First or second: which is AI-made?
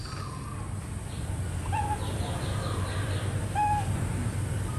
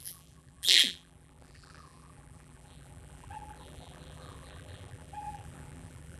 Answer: second